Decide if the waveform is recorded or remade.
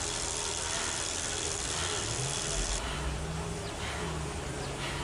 recorded